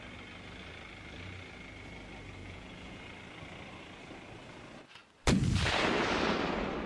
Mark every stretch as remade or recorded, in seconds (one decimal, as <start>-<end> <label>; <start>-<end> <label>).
0.0-2.4 recorded; 2.4-3.0 remade; 3.0-6.9 recorded

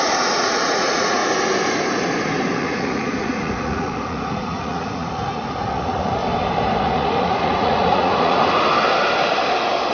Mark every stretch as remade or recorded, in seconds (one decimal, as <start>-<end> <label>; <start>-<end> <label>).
0.0-1.2 remade; 1.2-2.6 recorded; 2.6-6.2 remade; 6.2-6.8 recorded; 6.8-8.4 remade; 8.4-9.9 recorded